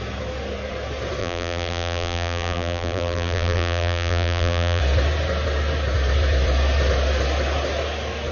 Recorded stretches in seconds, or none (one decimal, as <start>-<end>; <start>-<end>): 0.0-1.2; 4.8-8.3